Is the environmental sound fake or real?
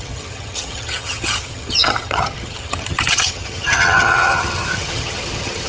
fake